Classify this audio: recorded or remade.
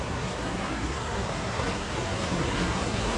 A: remade